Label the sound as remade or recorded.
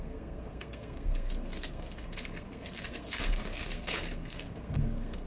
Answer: remade